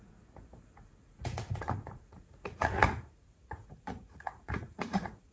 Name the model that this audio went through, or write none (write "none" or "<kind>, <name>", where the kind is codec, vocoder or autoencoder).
vocoder, Vocos